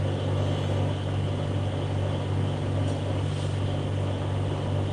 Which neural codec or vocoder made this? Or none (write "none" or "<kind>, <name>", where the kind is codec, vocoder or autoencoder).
none